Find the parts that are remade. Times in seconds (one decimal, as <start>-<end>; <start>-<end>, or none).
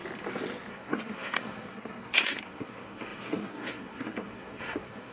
0.7-5.1